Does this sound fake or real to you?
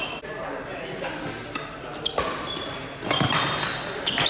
real